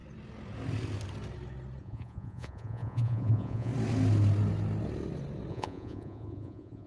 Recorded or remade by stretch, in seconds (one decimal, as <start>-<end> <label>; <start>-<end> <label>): 0.0-1.8 recorded; 1.8-3.7 remade; 3.7-5.5 recorded; 5.5-6.9 remade